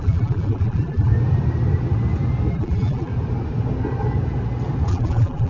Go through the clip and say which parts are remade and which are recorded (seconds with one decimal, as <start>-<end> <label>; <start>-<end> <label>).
0.0-1.1 remade; 1.1-2.5 recorded; 2.5-3.1 remade; 3.1-4.9 recorded; 4.9-5.5 remade